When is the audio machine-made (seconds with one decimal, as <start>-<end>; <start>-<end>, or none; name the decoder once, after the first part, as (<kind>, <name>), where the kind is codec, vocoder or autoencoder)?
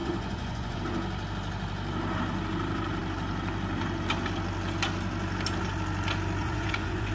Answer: 0.0-0.8 (vocoder, Vocos); 6.4-7.1